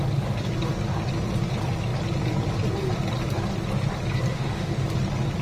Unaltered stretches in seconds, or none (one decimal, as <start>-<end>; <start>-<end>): 0.0-4.3; 4.8-5.4